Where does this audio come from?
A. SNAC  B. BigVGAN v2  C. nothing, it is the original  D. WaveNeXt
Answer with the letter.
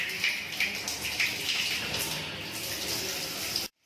C